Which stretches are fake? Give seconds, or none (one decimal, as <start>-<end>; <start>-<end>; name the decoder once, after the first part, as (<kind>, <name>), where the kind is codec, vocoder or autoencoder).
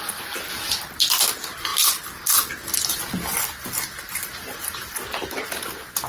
none